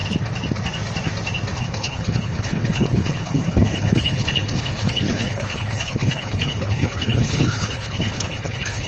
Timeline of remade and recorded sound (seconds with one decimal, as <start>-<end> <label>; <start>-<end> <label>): 0.0-1.6 recorded; 1.6-8.9 remade